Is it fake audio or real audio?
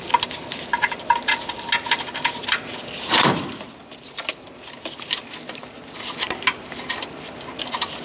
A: real